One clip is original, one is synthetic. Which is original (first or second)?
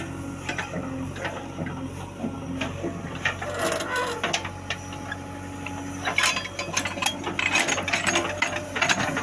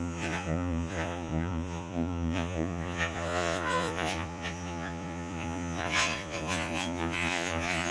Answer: first